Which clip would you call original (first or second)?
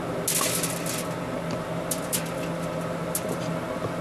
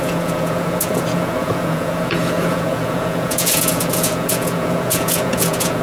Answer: first